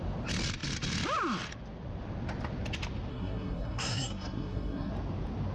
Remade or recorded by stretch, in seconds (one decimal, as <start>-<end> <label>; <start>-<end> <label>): 0.0-3.1 recorded; 3.1-4.9 remade; 4.9-5.5 recorded